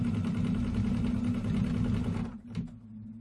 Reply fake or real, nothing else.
real